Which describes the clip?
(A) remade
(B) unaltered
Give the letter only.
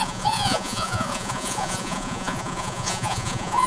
A